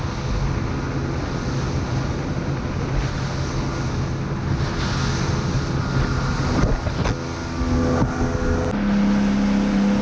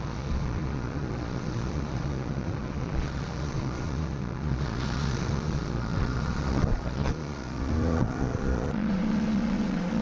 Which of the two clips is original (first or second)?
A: first